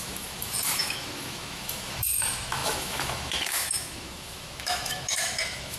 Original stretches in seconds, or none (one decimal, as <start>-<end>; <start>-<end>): none